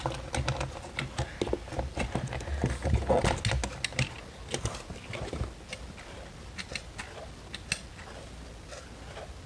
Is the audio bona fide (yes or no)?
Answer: yes